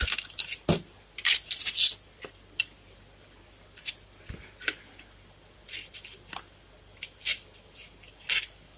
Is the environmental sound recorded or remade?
recorded